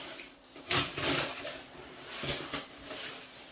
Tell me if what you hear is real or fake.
real